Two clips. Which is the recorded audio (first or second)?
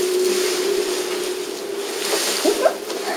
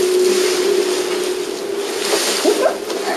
second